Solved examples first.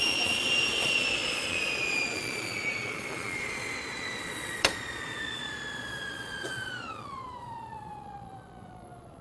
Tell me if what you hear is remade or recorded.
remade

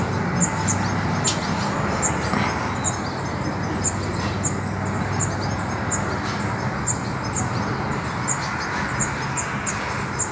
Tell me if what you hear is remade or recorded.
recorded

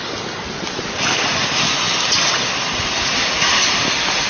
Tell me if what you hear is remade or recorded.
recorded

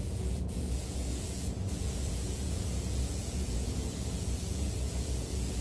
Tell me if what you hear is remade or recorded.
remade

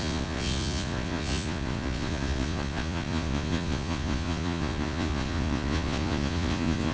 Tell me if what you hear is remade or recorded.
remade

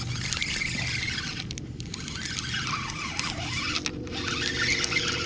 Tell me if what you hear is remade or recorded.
recorded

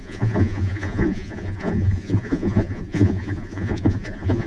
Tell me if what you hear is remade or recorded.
remade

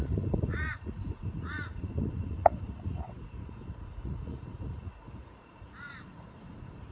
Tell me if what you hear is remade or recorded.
remade